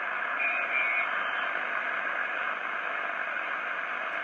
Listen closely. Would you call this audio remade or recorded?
recorded